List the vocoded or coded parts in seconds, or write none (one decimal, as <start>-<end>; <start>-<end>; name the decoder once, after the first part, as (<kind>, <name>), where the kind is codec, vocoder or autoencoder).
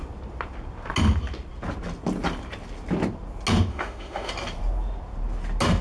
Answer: 3.7-4.3 (autoencoder, DAC-VAE)